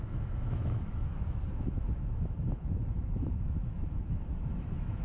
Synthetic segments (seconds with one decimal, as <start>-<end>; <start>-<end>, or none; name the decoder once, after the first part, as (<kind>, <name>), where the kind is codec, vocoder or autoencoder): 0.0-5.0 (autoencoder, DAC-VAE)